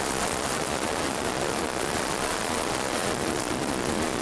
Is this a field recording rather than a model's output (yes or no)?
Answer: no